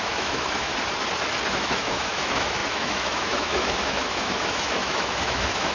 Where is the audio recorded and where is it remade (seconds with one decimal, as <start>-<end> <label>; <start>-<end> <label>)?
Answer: 0.0-0.7 remade; 0.7-1.5 recorded; 1.5-5.7 remade